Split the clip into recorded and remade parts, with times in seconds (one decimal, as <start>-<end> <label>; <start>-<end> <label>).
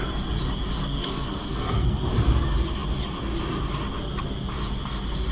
0.0-0.8 recorded; 0.8-2.0 remade; 2.0-5.3 recorded